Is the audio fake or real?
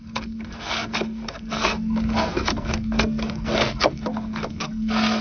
fake